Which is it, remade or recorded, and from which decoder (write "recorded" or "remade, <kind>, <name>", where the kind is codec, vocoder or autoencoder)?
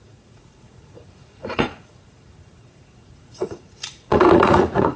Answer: remade, vocoder, Vocos